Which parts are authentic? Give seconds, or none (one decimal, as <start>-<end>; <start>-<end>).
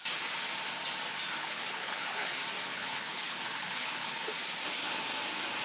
0.0-1.4; 2.3-2.7; 4.1-5.6